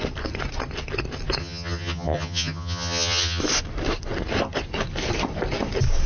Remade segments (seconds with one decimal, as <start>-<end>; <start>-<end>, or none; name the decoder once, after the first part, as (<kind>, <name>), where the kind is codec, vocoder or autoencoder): 1.4-3.4 (vocoder, HiFi-GAN)